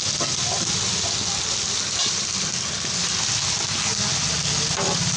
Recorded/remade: recorded